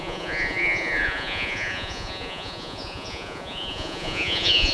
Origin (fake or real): fake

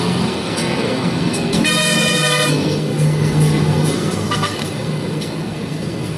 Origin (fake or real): fake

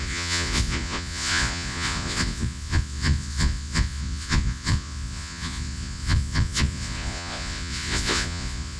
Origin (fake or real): fake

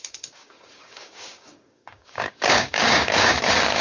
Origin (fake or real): fake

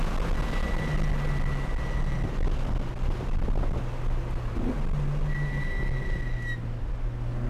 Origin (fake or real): real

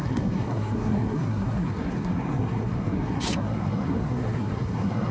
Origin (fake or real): fake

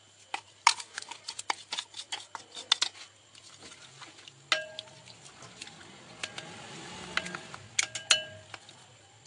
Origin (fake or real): real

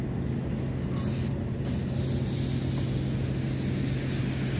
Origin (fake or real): real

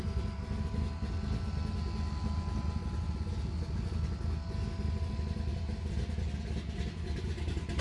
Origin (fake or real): real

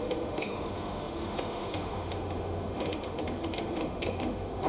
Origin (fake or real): fake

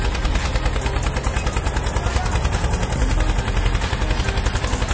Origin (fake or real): real